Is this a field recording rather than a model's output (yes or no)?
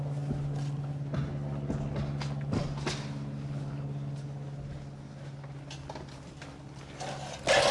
yes